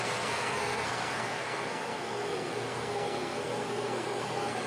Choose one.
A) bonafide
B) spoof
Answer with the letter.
B